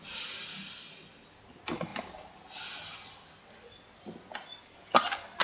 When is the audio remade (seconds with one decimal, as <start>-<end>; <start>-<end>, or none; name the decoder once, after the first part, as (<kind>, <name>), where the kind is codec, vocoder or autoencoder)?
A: none